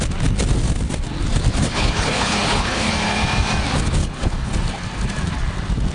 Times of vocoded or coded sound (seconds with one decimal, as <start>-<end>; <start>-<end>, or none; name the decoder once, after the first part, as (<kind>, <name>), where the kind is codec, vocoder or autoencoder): 1.6-2.9 (codec, HILCodec); 4.0-4.5